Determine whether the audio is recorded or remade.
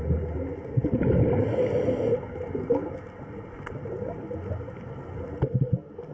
recorded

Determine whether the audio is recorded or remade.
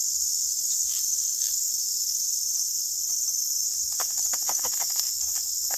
remade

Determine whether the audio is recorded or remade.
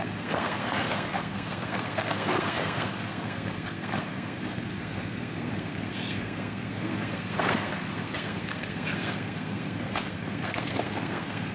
remade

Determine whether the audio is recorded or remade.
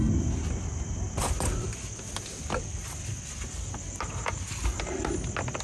recorded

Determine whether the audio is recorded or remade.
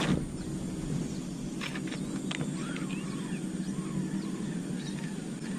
recorded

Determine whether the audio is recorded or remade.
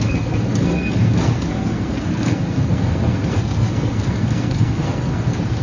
remade